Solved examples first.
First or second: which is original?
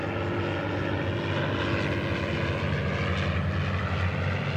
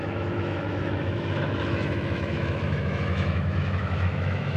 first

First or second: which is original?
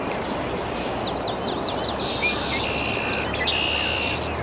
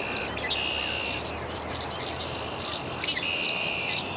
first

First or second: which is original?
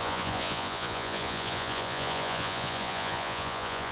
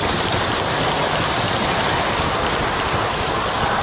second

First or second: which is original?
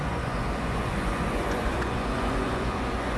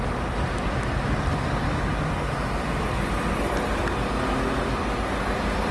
second